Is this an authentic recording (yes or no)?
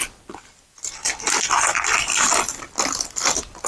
yes